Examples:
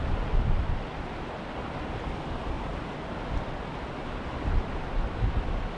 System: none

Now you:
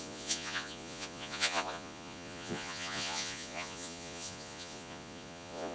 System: vocoder, Vocos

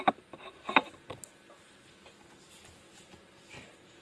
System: none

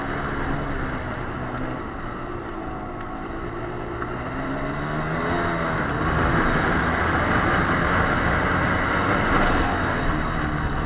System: none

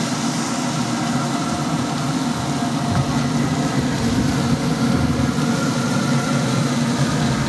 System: none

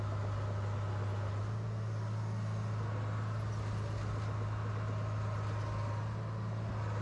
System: none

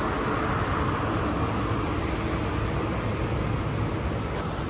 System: none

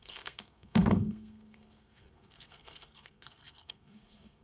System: codec, SNAC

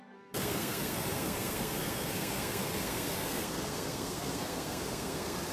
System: codec, SNAC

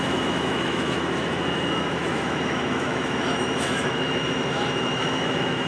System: autoencoder, DAC-VAE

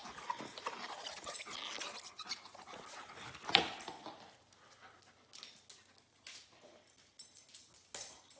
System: none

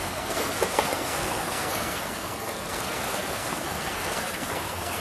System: codec, SNAC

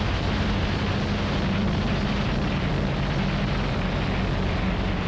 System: none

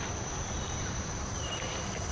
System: vocoder, BigVGAN v2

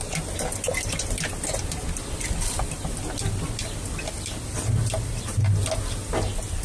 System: none